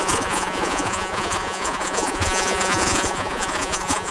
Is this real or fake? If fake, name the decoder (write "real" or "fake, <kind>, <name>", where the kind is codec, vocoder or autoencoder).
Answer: fake, vocoder, Vocos